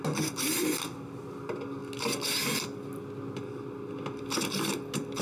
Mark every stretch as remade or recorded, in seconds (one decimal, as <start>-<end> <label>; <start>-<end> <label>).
0.0-5.2 recorded